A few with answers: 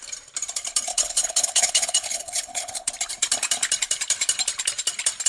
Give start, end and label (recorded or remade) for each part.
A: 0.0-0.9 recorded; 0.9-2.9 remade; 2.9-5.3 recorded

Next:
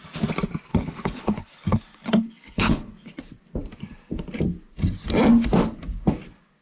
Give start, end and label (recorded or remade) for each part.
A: 0.0-0.7 recorded; 0.7-3.2 remade; 3.2-6.6 recorded

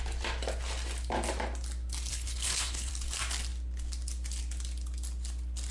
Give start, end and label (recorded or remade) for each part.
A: 0.0-2.1 recorded; 2.1-2.9 remade; 2.9-5.7 recorded

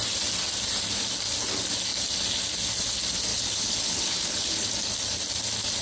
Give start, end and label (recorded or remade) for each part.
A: 0.0-3.3 recorded; 3.3-4.7 remade; 4.7-5.8 recorded

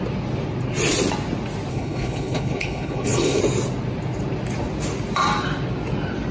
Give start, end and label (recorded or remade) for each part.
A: 0.0-1.7 recorded; 1.7-3.4 remade; 3.4-6.3 recorded

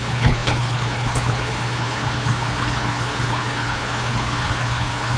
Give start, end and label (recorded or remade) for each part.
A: 0.0-5.2 remade

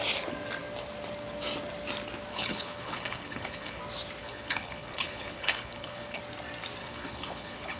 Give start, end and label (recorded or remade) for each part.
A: 0.0-2.3 recorded; 2.3-3.8 remade; 3.8-4.2 recorded; 4.2-6.2 remade; 6.2-6.8 recorded; 6.8-7.8 remade